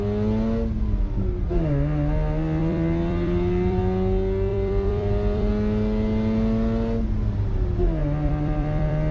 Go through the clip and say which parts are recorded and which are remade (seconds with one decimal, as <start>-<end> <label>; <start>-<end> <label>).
0.0-2.6 recorded; 2.6-3.8 remade; 3.8-4.5 recorded; 4.5-5.5 remade; 5.5-8.0 recorded; 8.0-9.1 remade